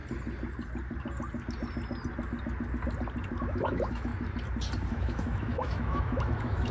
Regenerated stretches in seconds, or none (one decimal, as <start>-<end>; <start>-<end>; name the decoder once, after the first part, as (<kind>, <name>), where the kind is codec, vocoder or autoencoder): 3.4-4.1 (autoencoder, DAC-VAE); 4.9-6.7